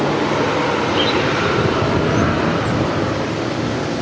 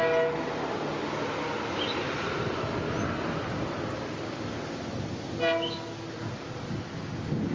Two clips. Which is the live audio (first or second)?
second